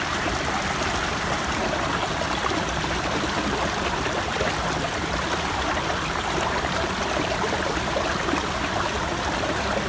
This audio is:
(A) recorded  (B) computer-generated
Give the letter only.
A